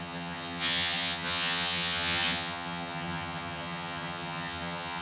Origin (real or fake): fake